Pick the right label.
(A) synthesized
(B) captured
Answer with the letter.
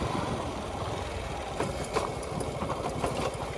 B